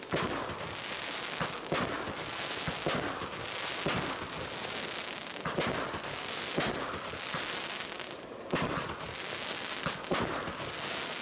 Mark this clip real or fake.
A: real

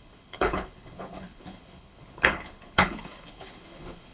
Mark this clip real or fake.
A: fake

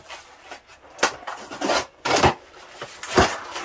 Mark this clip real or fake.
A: real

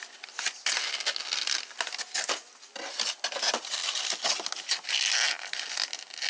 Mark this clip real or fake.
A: real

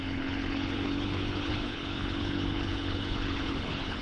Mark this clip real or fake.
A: fake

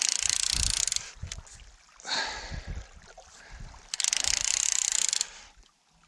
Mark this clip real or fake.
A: real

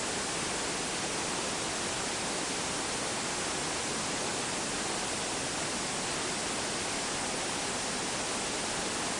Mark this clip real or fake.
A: real